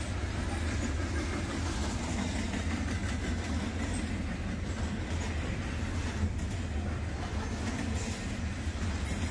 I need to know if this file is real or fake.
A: real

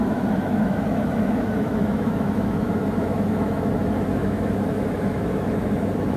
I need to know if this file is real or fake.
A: fake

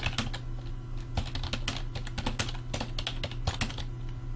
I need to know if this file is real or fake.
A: real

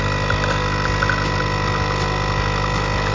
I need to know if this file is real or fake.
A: real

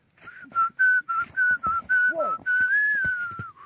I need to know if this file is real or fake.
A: real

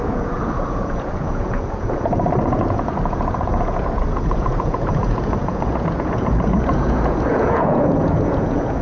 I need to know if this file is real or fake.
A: fake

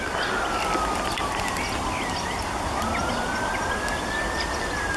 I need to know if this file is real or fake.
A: real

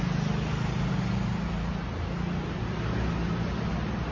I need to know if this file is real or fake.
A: real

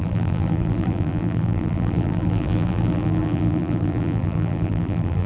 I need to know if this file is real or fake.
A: fake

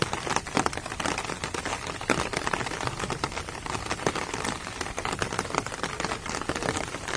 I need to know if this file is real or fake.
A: real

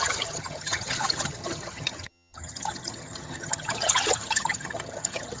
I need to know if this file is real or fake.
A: fake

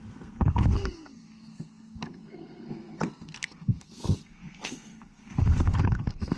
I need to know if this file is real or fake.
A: fake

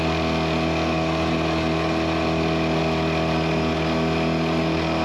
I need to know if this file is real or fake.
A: real